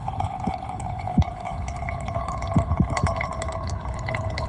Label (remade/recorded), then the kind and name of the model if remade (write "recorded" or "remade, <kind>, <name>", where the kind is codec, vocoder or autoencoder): remade, codec, HILCodec